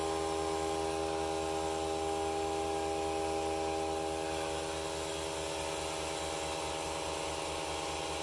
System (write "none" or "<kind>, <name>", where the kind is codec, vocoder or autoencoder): none